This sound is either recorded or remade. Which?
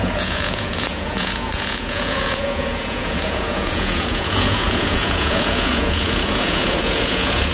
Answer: remade